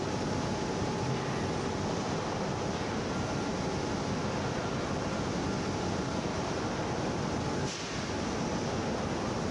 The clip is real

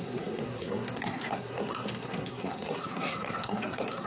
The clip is fake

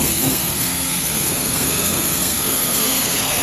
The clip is fake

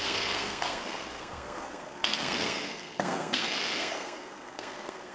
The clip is fake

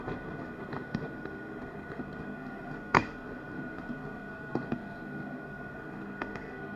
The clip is fake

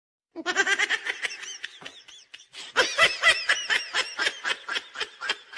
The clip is real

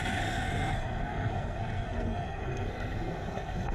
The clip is fake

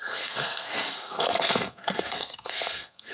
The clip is fake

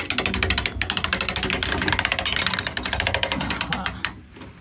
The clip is real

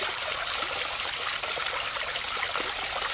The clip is real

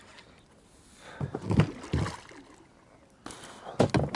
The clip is real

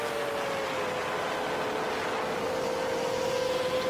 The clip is real